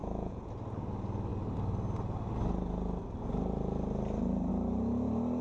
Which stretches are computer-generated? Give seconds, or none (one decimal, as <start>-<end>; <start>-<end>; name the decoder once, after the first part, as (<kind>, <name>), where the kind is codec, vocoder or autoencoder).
0.0-0.5 (vocoder, Vocos)